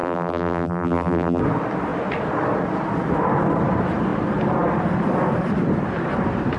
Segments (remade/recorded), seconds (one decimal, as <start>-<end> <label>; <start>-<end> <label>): 0.0-1.4 remade; 1.4-6.6 recorded